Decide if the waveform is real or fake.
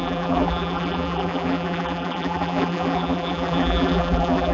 fake